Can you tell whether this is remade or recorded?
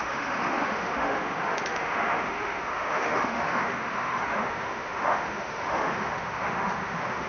remade